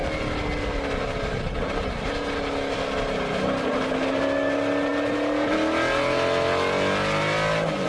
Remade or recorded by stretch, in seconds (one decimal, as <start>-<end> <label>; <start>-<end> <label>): 0.0-7.9 recorded